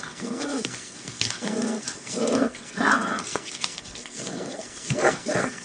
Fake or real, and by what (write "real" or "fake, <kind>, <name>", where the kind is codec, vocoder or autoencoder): fake, codec, SNAC